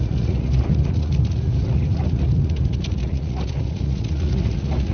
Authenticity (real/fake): fake